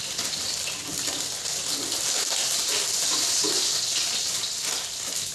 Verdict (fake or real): real